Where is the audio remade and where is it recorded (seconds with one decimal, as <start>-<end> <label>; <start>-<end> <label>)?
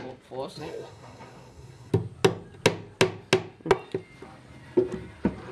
0.0-0.6 recorded; 0.6-1.9 remade; 1.9-5.5 recorded